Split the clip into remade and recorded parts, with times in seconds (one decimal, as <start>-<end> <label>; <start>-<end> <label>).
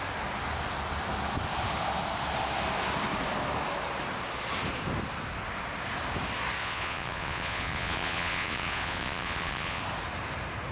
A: 0.0-6.6 recorded; 6.6-9.8 remade; 9.8-10.7 recorded